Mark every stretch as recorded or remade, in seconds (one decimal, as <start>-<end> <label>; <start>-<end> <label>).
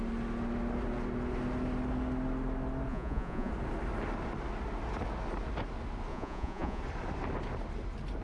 0.0-2.9 recorded; 2.9-3.5 remade; 3.5-6.1 recorded; 6.1-6.8 remade; 6.8-8.2 recorded